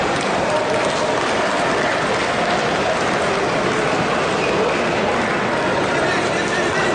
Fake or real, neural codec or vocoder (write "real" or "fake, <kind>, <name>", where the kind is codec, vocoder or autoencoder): real